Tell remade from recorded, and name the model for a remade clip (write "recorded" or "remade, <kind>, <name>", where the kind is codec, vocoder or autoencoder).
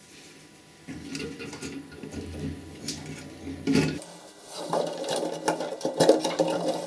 recorded